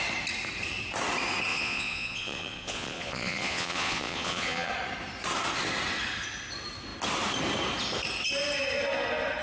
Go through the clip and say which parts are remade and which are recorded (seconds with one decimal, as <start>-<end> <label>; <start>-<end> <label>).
0.0-1.5 recorded; 1.5-4.7 remade; 4.7-9.4 recorded